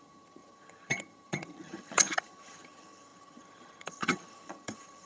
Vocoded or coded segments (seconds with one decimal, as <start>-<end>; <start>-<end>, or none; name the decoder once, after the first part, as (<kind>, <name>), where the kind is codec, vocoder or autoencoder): 0.0-5.1 (vocoder, HiFi-GAN)